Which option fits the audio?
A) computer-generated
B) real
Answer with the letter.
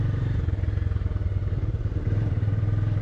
A